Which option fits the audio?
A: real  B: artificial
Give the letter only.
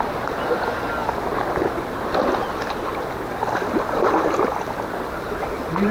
A